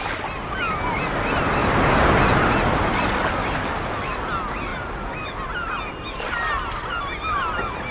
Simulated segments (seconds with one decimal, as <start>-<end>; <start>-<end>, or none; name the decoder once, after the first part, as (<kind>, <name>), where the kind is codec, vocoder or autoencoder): none